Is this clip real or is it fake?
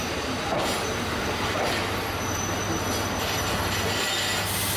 real